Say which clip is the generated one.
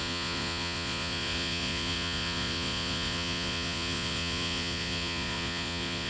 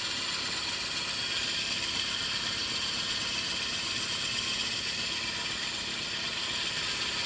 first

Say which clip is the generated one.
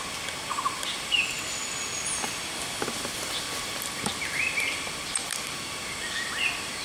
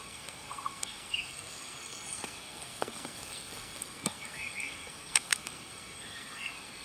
second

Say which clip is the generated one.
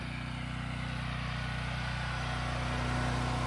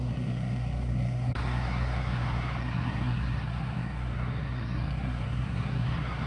second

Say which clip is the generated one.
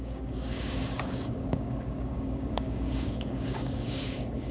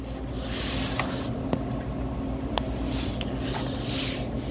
first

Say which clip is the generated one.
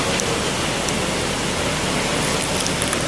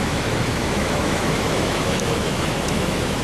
second